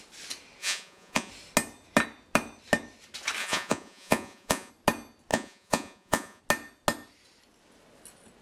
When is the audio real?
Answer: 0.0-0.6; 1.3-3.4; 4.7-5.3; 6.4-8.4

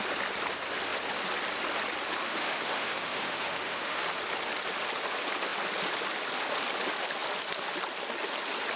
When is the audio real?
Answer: 0.0-2.2; 4.0-8.8

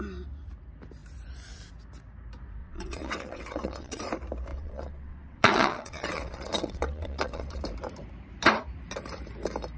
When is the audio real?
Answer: 0.0-2.6; 4.0-4.5; 7.6-9.8

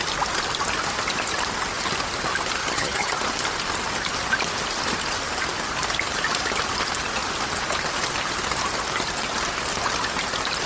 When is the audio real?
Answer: 0.0-2.6; 3.2-10.7

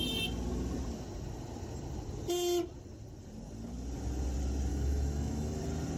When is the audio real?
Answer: 0.0-4.7; 5.6-6.0